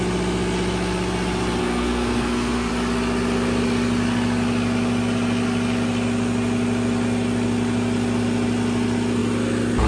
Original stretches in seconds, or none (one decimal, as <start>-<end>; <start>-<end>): 0.0-1.6; 2.7-9.9